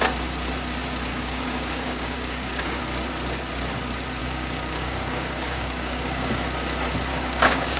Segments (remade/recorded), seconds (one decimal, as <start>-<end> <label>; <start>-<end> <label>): 0.0-1.1 recorded; 1.1-2.8 remade; 2.8-4.2 recorded; 4.2-6.3 remade; 6.3-7.1 recorded; 7.1-7.8 remade